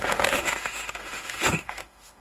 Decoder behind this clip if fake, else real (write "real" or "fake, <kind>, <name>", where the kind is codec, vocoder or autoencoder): fake, autoencoder, DAC-VAE